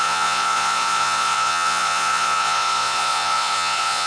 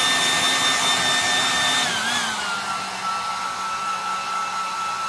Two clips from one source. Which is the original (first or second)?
second